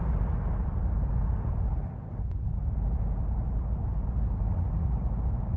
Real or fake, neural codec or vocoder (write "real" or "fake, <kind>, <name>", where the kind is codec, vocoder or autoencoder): real